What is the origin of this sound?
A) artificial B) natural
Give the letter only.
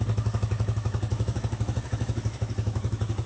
A